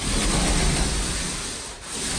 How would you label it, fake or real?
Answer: real